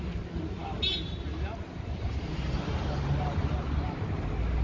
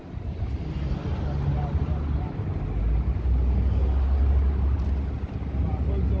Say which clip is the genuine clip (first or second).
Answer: second